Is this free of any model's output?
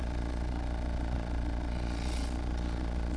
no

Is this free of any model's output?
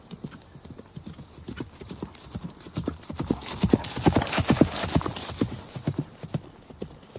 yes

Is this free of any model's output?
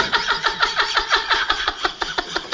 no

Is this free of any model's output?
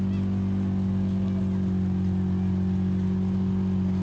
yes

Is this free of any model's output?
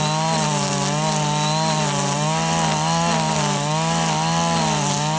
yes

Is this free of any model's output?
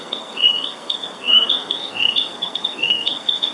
no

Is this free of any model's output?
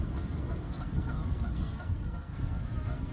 no